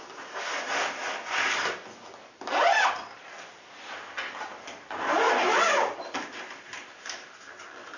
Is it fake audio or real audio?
real